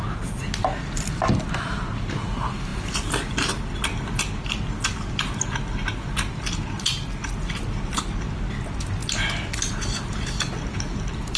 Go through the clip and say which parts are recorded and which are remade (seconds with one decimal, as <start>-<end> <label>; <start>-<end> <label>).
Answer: 0.0-11.4 recorded